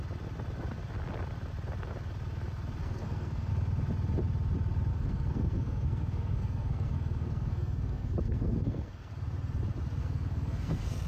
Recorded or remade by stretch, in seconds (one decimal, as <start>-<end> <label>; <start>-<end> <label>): 0.0-2.8 recorded; 2.8-3.5 remade; 3.5-4.9 recorded; 4.9-9.1 remade; 9.1-10.0 recorded; 10.0-11.1 remade